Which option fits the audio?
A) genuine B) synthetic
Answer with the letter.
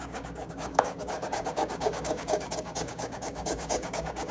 B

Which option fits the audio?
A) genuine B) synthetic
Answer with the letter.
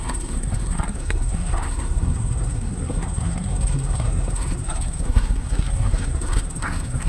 B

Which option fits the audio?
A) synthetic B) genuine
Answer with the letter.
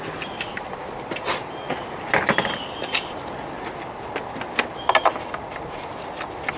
B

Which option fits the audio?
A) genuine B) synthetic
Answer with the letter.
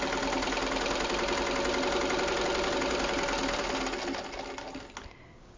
A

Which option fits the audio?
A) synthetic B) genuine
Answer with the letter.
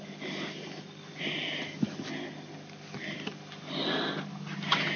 B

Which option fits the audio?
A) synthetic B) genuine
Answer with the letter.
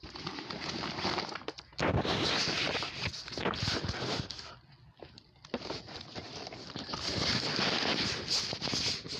B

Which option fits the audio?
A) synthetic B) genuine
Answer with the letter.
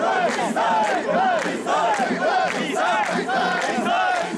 B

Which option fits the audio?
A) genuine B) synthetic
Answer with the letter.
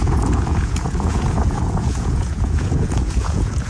B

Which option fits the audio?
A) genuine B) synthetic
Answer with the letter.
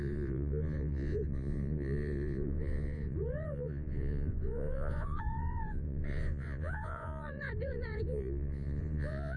B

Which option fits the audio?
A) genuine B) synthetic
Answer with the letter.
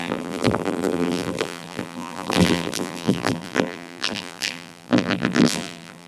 B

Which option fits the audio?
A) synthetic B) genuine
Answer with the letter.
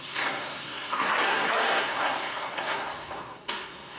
A